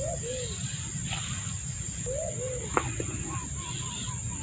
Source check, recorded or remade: recorded